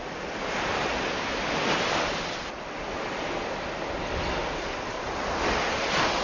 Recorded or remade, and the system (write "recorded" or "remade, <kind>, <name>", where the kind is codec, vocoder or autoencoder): recorded